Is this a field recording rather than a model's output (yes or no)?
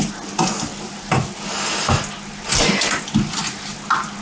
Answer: yes